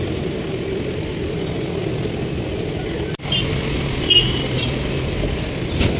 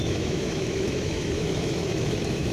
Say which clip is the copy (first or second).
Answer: second